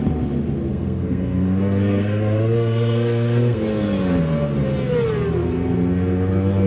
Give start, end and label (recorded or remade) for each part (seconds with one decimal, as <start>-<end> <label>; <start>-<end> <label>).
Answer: 0.0-0.7 recorded; 0.7-3.6 remade; 3.6-6.7 recorded